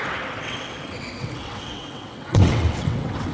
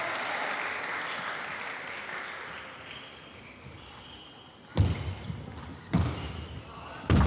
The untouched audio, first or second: second